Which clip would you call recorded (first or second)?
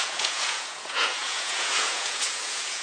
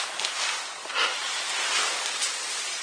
second